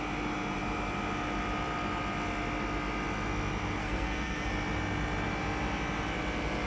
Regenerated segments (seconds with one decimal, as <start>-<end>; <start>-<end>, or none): 3.8-4.5